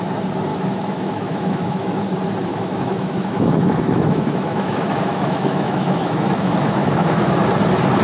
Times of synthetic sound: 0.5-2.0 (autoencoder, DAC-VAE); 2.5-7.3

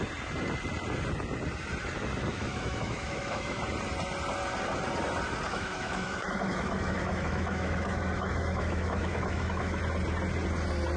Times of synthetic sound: 2.3-3.6 (autoencoder, DAC-VAE); 5.5-9.8